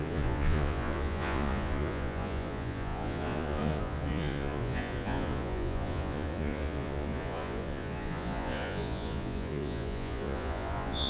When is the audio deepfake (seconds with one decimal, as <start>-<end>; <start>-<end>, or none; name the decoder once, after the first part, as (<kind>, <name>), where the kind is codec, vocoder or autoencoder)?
0.0-11.1 (vocoder, Vocos)